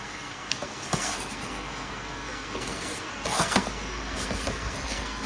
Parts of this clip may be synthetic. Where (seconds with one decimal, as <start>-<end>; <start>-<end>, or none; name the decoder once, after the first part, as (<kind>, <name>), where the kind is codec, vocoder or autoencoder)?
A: 0.0-5.3 (codec, SNAC)